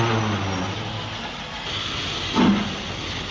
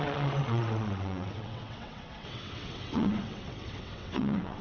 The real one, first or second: first